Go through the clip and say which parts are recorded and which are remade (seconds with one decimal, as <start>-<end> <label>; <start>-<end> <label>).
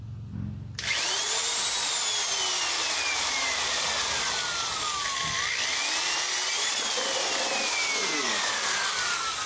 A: 0.0-9.5 recorded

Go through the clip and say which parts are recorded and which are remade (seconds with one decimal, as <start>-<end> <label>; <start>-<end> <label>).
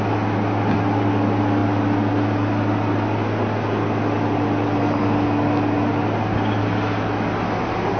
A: 0.0-8.0 recorded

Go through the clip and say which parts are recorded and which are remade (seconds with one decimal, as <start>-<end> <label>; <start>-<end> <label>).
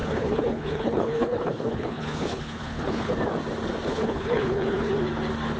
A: 0.0-3.1 remade; 3.1-3.9 recorded; 3.9-4.9 remade; 4.9-5.6 recorded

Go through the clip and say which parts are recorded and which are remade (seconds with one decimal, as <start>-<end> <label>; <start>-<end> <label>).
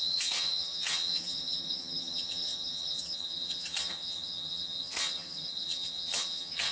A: 0.0-6.7 remade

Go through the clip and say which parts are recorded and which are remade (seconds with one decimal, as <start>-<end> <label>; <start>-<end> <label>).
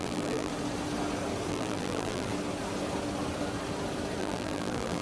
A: 0.0-0.5 remade; 0.5-1.5 recorded; 1.5-2.3 remade; 2.3-4.2 recorded; 4.2-5.0 remade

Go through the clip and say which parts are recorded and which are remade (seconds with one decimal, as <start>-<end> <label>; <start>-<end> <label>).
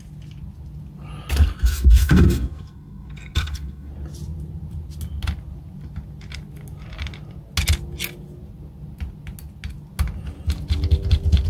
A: 0.0-1.4 recorded; 1.4-3.9 remade; 3.9-11.5 recorded